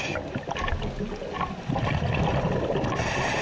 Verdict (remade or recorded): recorded